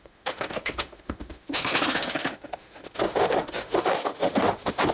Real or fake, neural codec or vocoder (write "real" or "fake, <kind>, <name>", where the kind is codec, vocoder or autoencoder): fake, autoencoder, DAC-VAE